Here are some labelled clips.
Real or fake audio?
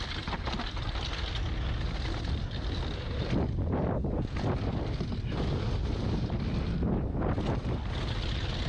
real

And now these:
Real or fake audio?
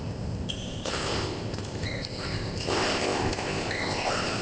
fake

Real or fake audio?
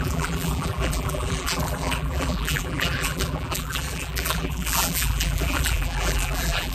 fake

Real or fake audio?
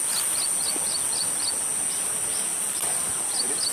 real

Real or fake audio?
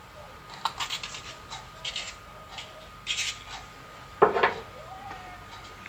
real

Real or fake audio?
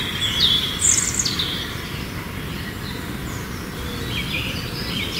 real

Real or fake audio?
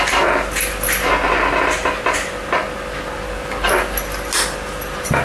real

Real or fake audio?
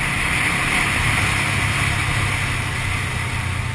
real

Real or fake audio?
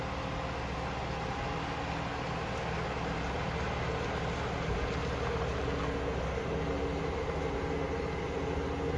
real